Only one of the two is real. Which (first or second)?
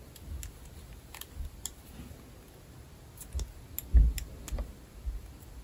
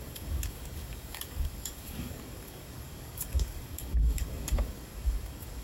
first